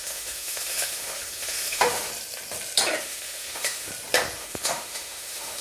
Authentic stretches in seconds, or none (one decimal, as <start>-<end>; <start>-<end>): 2.1-3.0; 3.9-4.4